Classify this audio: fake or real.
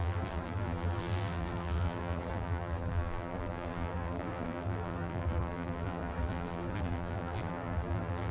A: fake